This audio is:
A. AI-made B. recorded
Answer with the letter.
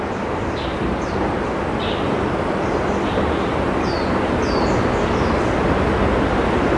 B